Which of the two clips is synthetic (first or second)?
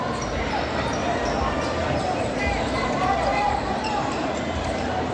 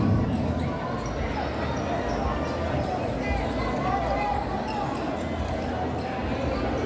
first